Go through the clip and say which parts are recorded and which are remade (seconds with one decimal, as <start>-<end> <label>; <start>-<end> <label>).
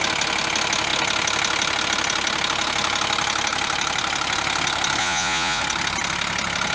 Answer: 0.0-5.0 recorded; 5.0-5.6 remade; 5.6-6.7 recorded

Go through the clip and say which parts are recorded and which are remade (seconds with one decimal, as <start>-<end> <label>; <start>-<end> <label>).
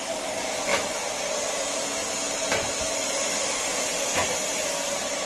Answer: 0.0-5.3 recorded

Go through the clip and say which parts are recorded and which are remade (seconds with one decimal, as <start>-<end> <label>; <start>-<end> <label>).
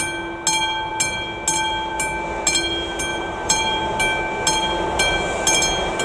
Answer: 0.0-3.1 recorded; 3.1-4.0 remade; 4.0-6.0 recorded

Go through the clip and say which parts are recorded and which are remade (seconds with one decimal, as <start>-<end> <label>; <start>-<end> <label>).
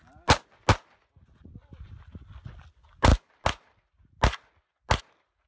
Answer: 0.0-5.5 recorded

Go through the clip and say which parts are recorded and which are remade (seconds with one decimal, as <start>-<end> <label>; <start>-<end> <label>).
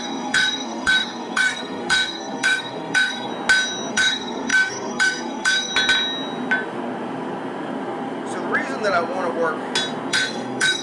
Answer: 0.0-3.3 remade; 3.3-3.9 recorded; 3.9-5.7 remade; 5.7-10.1 recorded; 10.1-10.8 remade